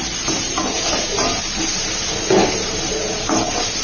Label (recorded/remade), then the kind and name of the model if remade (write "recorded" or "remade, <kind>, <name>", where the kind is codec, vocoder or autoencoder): recorded